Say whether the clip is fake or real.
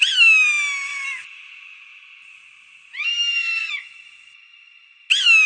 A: real